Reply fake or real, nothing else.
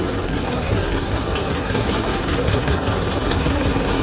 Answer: fake